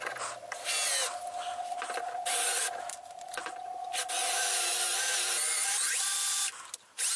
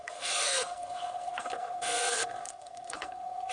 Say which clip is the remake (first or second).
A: second